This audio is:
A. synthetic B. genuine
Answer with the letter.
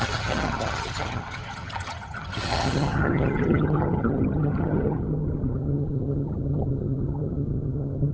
A